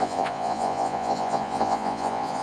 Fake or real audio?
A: fake